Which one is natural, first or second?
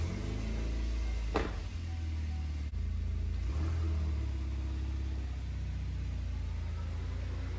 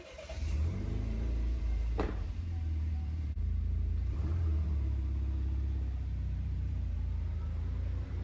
first